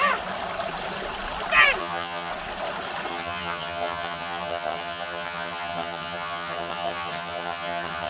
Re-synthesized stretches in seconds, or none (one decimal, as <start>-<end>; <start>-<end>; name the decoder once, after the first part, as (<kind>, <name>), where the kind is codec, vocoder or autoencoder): 1.8-2.3 (vocoder, HiFi-GAN); 3.1-8.1